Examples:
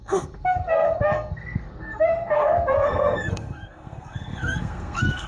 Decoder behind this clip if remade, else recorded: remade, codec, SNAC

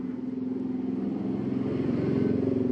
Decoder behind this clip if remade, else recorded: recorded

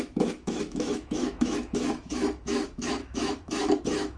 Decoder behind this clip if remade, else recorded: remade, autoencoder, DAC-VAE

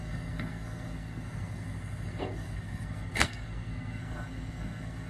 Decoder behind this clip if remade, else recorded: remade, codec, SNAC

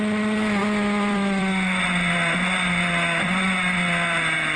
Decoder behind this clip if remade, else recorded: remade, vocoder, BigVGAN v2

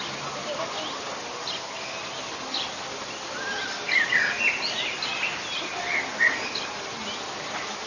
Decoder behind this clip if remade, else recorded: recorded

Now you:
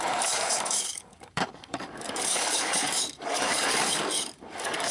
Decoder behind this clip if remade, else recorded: remade, codec, DAC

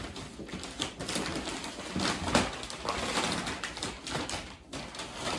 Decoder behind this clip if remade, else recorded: recorded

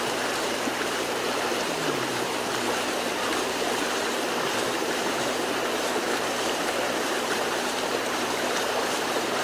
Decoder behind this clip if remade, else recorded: remade, vocoder, BigVGAN v2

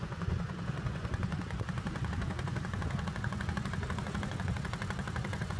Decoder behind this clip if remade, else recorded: remade, vocoder, Vocos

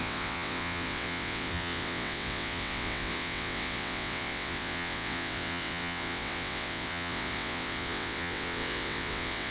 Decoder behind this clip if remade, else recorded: remade, vocoder, WaveNeXt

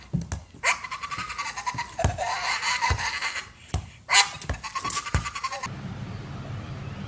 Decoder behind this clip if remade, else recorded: recorded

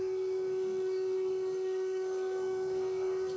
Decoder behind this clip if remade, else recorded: remade, codec, SNAC